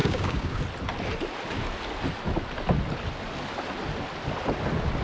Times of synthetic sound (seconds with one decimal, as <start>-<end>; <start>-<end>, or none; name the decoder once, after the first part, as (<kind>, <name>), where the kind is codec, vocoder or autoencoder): 0.0-0.6 (codec, DAC)